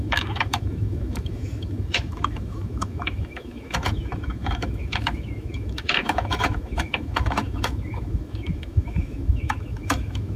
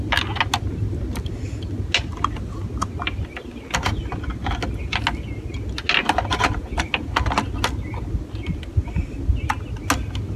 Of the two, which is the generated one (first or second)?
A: first